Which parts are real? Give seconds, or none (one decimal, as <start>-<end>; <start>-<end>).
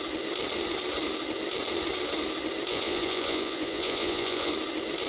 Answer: 0.0-2.7; 4.5-5.1